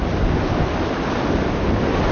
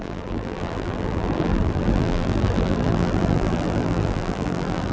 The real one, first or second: first